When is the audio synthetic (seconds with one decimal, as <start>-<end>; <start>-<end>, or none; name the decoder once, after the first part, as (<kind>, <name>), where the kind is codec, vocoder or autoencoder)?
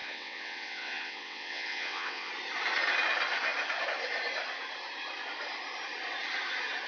0.0-2.3 (vocoder, WaveNeXt)